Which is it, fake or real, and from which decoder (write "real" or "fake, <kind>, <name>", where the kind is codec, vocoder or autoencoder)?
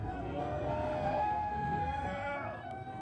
fake, codec, SNAC